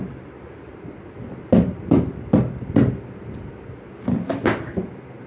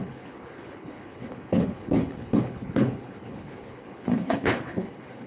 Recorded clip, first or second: first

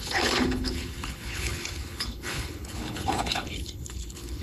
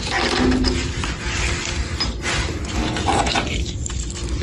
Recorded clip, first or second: second